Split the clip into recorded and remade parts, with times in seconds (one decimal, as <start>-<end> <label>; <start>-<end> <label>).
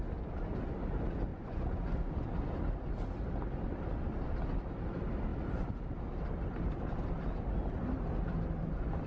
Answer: 0.0-1.3 recorded; 1.3-2.3 remade; 2.3-9.1 recorded